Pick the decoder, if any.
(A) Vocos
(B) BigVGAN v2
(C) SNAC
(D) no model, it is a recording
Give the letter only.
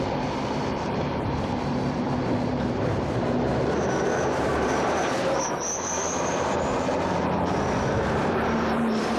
B